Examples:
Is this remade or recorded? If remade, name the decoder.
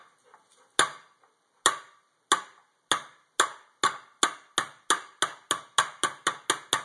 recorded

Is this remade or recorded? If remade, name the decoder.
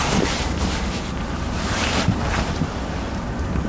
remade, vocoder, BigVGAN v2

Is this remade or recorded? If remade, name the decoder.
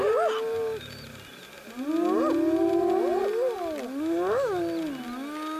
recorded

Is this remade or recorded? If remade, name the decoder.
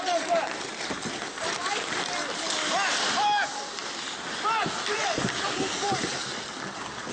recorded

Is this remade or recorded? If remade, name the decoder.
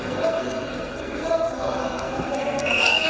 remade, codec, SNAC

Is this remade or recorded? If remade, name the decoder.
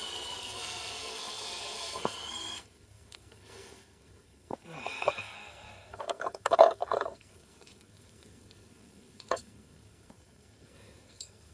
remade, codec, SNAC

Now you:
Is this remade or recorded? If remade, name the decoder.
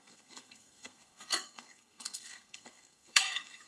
remade, codec, SNAC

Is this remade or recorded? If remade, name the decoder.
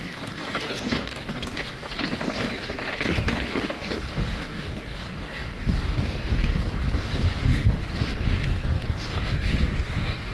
remade, codec, DAC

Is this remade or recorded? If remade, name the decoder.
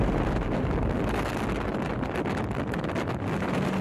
recorded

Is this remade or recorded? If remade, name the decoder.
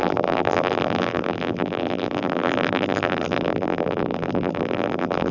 remade, vocoder, BigVGAN v2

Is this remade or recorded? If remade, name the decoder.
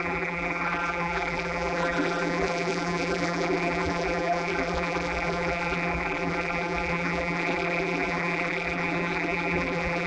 remade, vocoder, BigVGAN v2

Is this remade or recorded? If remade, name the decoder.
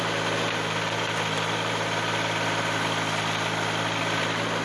recorded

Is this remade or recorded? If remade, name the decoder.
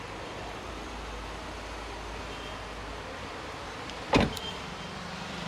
recorded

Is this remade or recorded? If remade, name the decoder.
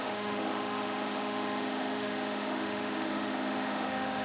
remade, autoencoder, DAC-VAE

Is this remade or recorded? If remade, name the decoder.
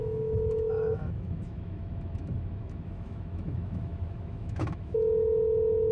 remade, autoencoder, DAC-VAE